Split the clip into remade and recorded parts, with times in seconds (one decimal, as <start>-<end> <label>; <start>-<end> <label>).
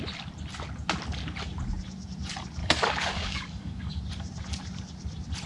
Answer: 0.0-2.6 recorded; 2.6-4.0 remade; 4.0-5.5 recorded